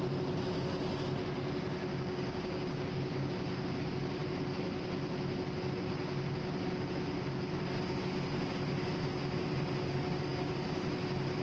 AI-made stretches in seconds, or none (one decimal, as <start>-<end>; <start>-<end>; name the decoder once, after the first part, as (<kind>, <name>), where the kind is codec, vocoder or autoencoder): 1.9-3.3 (codec, DAC); 10.3-10.9